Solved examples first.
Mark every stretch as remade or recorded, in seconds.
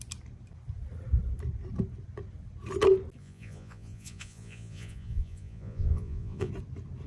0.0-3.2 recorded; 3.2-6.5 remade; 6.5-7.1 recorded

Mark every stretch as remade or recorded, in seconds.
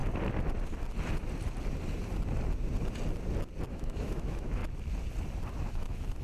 0.0-3.7 recorded; 3.7-4.6 remade; 4.6-5.7 recorded; 5.7-6.2 remade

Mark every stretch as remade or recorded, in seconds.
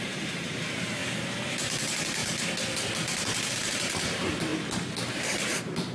0.0-1.0 remade; 1.0-1.5 recorded; 1.5-2.2 remade; 2.2-3.5 recorded; 3.5-4.5 remade; 4.5-5.1 recorded; 5.1-5.9 remade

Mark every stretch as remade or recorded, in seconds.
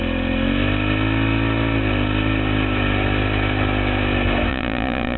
0.0-4.5 recorded; 4.5-5.2 remade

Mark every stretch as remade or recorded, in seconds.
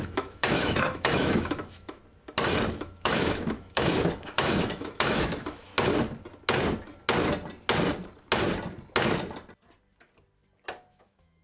0.0-2.0 remade; 2.0-2.7 recorded; 2.7-5.7 remade; 5.7-10.9 recorded; 10.9-11.4 remade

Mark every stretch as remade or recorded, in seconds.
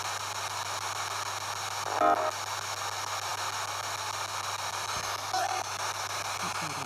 0.0-6.9 recorded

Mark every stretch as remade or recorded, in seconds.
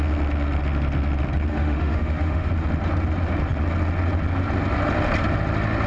0.0-1.5 recorded; 1.5-2.5 remade; 2.5-5.9 recorded